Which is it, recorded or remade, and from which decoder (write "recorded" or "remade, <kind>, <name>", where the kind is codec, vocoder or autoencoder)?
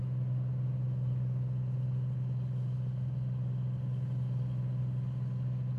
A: recorded